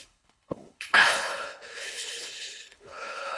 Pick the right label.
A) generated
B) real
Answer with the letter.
A